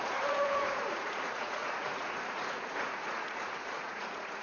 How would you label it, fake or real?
fake